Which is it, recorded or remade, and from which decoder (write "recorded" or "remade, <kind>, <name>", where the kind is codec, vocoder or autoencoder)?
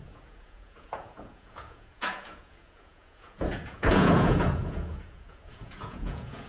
remade, vocoder, Vocos